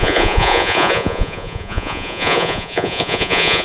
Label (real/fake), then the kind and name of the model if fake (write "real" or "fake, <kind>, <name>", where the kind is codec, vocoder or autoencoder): fake, vocoder, Vocos